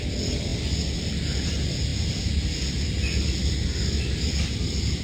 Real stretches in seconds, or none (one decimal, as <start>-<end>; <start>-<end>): 0.0-5.0